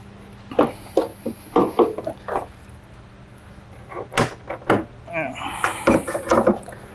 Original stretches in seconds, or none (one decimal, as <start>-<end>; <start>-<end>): 0.0-6.9